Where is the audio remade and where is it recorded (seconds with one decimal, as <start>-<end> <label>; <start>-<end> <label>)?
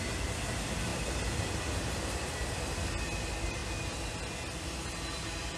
0.0-5.6 recorded